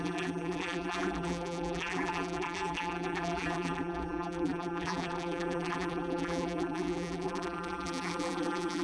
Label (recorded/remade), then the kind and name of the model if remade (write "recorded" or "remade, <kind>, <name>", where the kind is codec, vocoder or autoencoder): remade, vocoder, BigVGAN v2